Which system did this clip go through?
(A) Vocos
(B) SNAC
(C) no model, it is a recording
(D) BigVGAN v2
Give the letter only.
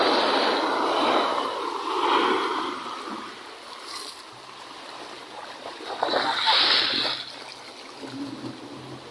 C